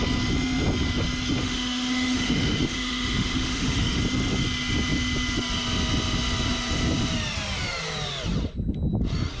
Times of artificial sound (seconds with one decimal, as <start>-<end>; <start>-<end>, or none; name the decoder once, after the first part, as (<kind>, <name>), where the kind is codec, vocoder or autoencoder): 1.4-4.0 (autoencoder, DAC-VAE)